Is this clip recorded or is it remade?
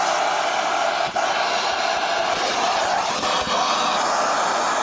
recorded